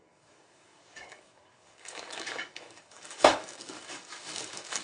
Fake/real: fake